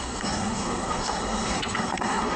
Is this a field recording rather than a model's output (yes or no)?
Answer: no